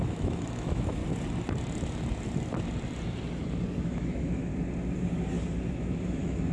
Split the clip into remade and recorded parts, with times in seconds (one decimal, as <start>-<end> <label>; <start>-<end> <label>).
0.0-1.0 remade; 1.0-3.8 recorded; 3.8-4.5 remade; 4.5-5.7 recorded; 5.7-6.5 remade